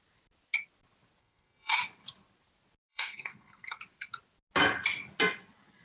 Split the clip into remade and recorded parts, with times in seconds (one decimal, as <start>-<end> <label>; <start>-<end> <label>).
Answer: 0.0-1.2 recorded; 1.2-1.8 remade; 1.8-2.9 recorded; 2.9-3.8 remade; 3.8-5.8 recorded